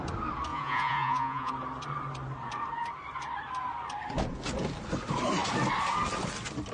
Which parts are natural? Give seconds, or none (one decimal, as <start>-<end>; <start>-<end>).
0.0-0.5; 1.5-6.7